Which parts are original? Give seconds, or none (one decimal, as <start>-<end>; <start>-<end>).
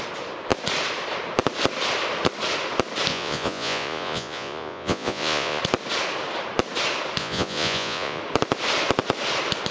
0.0-3.1; 5.6-7.2; 8.2-9.7